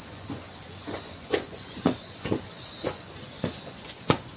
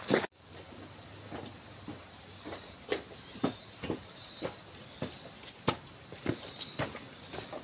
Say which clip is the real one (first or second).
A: second